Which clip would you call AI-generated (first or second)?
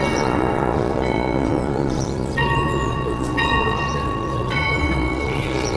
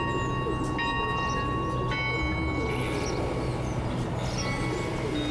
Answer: first